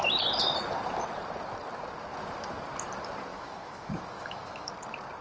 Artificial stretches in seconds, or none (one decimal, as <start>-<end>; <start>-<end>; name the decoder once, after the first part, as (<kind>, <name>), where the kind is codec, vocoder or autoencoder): 3.3-4.7 (autoencoder, DAC-VAE)

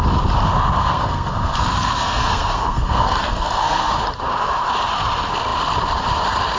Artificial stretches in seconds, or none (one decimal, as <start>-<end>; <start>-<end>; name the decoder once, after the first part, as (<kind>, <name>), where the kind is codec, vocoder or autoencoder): 0.8-3.9 (codec, SNAC)

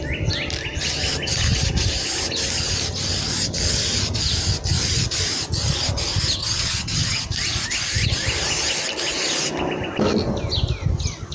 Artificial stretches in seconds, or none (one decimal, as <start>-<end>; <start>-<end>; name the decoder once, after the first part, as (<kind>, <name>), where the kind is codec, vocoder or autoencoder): 6.4-7.2 (vocoder, HiFi-GAN)

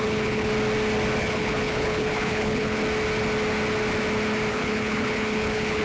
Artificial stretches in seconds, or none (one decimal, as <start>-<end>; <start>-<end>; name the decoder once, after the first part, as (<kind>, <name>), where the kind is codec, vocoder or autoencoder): 0.0-0.5 (codec, HILCodec); 1.2-2.8; 4.5-5.8

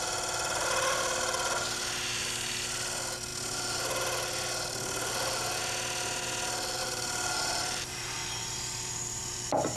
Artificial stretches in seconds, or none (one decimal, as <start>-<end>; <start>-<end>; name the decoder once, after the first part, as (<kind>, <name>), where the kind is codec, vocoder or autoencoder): 6.8-9.8 (vocoder, BigVGAN v2)

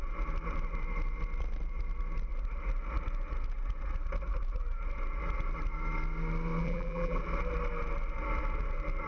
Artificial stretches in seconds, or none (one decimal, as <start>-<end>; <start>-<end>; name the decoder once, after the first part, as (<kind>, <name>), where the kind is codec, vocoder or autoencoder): 6.6-7.2 (vocoder, BigVGAN v2)

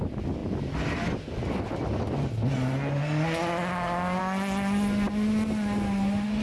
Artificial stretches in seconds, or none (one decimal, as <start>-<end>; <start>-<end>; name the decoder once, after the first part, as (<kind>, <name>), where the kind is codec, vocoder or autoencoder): none